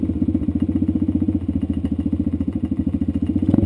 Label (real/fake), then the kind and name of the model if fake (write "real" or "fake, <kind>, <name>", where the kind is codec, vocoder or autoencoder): real